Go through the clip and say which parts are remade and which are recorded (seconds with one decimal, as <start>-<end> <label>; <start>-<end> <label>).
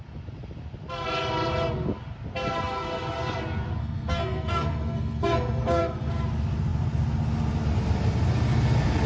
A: 0.0-3.8 recorded; 3.8-6.1 remade; 6.1-9.1 recorded